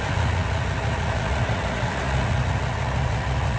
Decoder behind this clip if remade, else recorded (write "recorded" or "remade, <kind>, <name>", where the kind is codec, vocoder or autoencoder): remade, vocoder, Vocos